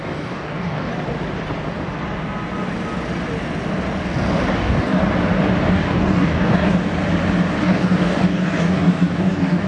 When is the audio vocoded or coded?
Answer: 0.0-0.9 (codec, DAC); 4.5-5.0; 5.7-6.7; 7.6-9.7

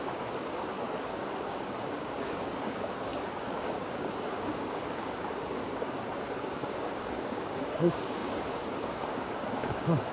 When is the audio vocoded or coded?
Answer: 0.0-10.1 (codec, DAC)